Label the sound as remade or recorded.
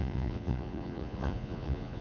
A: remade